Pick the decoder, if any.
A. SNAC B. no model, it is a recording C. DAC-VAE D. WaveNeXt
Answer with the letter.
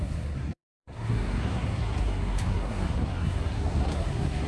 A